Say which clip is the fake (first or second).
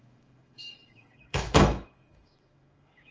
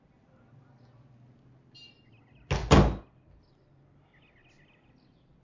first